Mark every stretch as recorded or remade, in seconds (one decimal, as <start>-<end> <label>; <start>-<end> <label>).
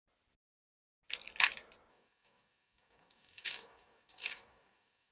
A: 0.0-1.9 recorded; 1.9-5.1 remade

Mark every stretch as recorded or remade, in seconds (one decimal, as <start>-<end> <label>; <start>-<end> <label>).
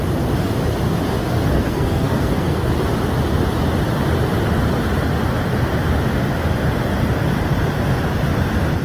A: 0.0-1.3 recorded; 1.3-2.7 remade; 2.7-8.8 recorded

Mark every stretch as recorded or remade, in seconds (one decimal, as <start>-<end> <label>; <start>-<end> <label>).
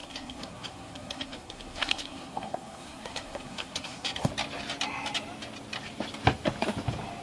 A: 0.0-4.3 remade; 4.3-7.2 recorded